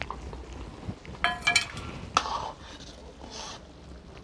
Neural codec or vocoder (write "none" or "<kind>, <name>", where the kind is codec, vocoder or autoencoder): none